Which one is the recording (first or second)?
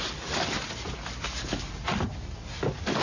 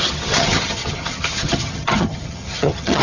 first